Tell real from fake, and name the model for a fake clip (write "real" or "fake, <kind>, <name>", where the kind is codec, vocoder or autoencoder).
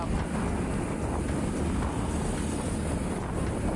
real